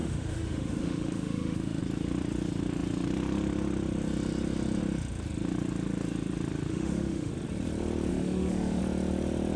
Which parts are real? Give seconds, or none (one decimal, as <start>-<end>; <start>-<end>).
1.8-6.7; 7.3-8.1; 8.8-9.6